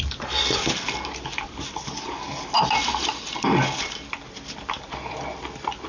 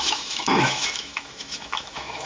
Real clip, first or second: first